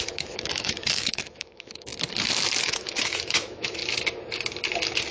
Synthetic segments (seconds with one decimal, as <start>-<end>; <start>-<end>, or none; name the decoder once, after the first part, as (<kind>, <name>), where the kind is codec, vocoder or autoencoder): 0.0-1.9 (autoencoder, DAC-VAE); 2.6-3.8